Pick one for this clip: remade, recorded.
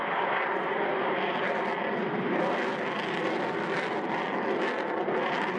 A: recorded